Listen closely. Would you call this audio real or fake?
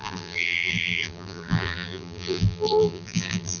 fake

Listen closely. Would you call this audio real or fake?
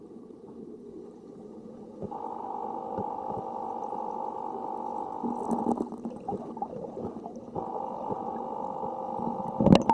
real